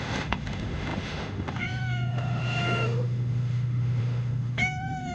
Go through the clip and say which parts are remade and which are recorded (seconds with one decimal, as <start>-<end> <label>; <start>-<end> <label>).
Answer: 0.0-5.1 remade